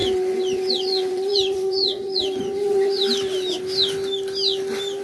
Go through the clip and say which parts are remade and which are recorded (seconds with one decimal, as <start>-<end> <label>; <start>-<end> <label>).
0.0-3.0 remade; 3.0-5.0 recorded